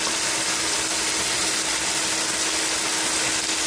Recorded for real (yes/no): yes